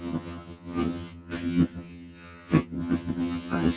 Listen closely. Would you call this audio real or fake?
fake